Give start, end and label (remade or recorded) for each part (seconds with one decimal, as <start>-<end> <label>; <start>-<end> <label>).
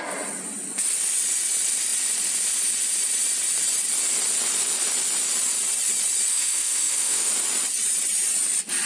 0.0-6.3 recorded; 6.3-7.3 remade; 7.3-8.9 recorded